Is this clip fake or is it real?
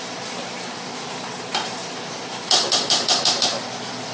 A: fake